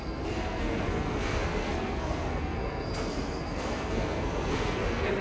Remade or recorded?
remade